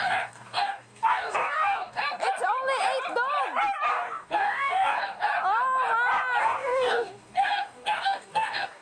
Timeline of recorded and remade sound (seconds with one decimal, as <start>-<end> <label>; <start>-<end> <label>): 0.0-2.0 remade; 2.0-3.9 recorded; 3.9-5.3 remade; 5.3-6.4 recorded; 6.4-8.8 remade